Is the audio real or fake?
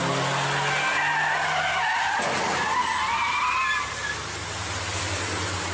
real